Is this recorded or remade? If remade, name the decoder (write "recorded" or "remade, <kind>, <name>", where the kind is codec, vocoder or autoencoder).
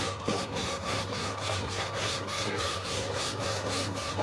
remade, codec, SNAC